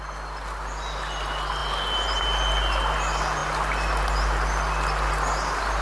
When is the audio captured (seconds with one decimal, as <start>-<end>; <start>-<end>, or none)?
0.0-5.8